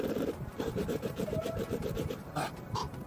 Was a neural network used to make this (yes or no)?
yes